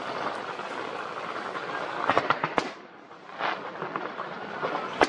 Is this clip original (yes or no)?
yes